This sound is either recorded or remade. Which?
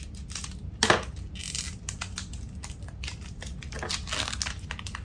recorded